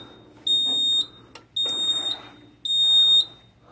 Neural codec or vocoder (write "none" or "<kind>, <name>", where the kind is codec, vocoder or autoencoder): none